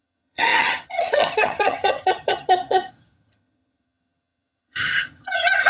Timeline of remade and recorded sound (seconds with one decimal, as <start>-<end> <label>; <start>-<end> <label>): 0.0-5.7 remade